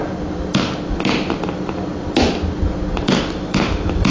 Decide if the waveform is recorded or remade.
recorded